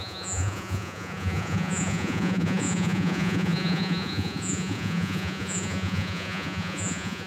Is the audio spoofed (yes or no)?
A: yes